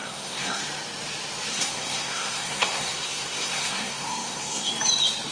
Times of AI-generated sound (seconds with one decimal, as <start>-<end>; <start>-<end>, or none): 0.0-0.6; 1.5-4.7